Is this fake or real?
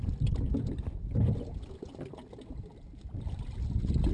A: real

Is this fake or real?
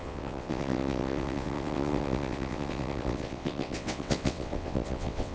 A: fake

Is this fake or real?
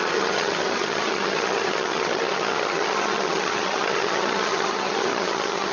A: fake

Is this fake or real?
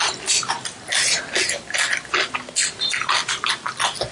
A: real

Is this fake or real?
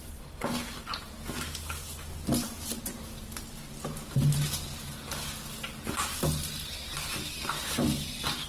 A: real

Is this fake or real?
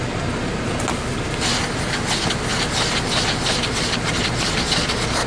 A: real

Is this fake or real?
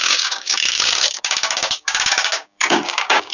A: fake